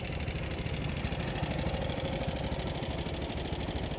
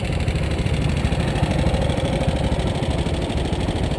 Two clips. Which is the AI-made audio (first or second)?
second